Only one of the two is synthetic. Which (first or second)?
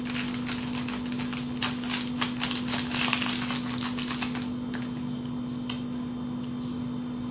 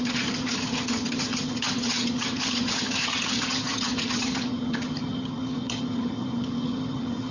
second